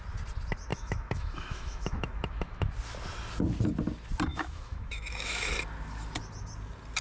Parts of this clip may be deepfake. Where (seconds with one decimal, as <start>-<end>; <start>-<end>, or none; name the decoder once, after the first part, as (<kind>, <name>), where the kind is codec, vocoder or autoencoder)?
0.7-2.7 (autoencoder, DAC-VAE); 4.3-5.5